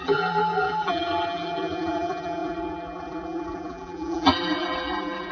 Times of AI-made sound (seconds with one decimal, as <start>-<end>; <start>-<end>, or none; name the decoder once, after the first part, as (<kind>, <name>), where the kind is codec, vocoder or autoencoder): 0.0-5.3 (vocoder, BigVGAN v2)